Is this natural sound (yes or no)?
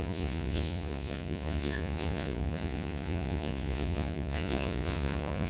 no